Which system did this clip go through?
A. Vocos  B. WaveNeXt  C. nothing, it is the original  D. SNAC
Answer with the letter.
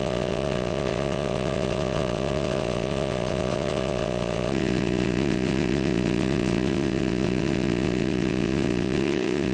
B